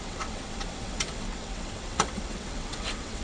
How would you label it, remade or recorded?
remade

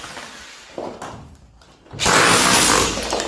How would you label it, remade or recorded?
recorded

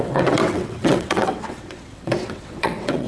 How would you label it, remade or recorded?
remade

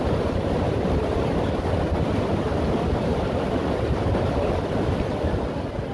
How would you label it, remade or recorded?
recorded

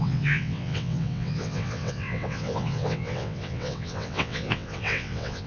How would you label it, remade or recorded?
remade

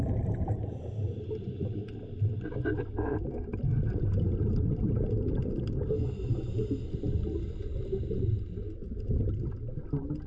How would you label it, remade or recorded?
recorded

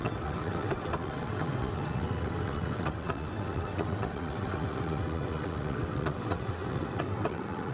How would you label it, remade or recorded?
remade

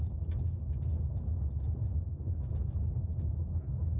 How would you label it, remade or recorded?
recorded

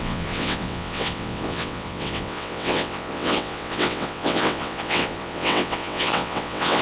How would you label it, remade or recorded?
remade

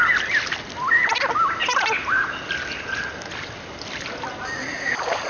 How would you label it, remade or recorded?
recorded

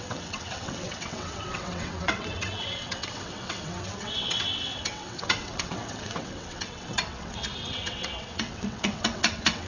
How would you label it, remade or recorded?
remade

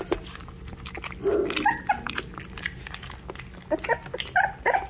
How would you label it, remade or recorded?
recorded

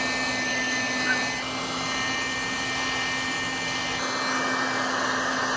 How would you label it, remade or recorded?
recorded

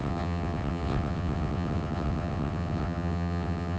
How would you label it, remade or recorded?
remade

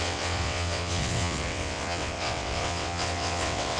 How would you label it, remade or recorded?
remade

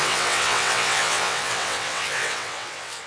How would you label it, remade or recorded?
remade